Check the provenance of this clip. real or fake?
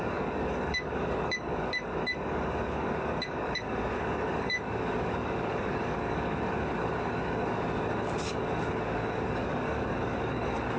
fake